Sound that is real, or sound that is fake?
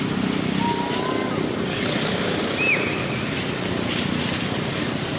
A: real